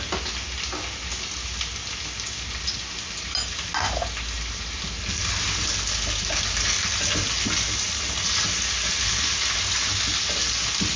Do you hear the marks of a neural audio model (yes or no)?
no